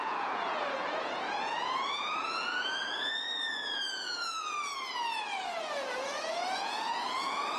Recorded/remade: remade